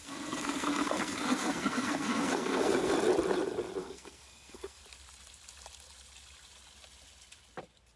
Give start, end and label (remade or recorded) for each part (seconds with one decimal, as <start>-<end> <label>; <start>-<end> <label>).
0.0-2.9 remade; 2.9-3.8 recorded; 3.8-4.8 remade; 4.8-8.0 recorded